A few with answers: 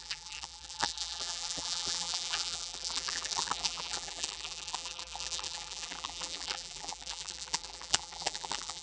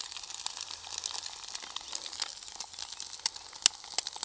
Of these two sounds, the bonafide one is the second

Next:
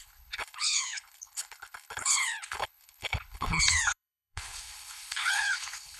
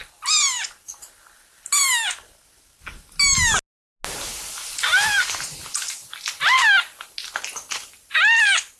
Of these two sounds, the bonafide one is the second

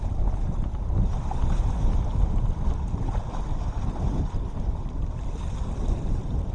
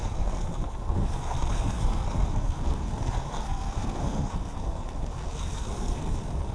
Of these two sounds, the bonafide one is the first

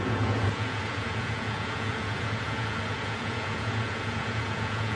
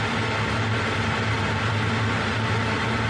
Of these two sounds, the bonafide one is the second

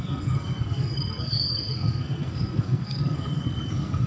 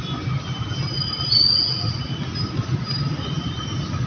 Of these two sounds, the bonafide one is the second